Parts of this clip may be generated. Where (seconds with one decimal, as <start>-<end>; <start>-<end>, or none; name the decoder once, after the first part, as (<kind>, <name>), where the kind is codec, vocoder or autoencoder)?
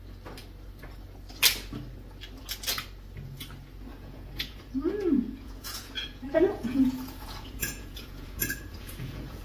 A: 3.9-9.4 (vocoder, Vocos)